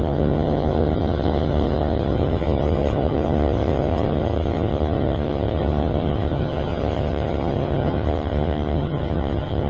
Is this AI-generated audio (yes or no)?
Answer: yes